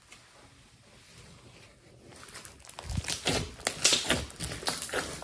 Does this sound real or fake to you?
real